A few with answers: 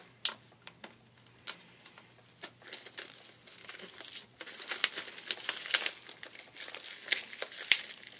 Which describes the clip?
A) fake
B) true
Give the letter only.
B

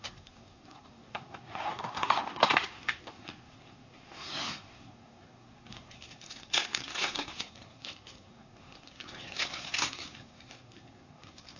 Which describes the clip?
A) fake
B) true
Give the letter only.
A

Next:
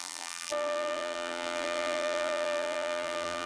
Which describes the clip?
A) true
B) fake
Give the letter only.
B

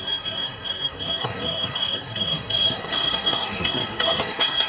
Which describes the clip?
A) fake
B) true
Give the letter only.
A